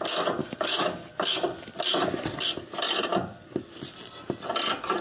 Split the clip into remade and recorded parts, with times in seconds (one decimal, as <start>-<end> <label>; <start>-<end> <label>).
0.0-0.4 recorded; 0.4-1.1 remade; 1.1-5.0 recorded